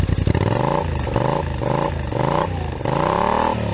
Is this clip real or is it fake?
real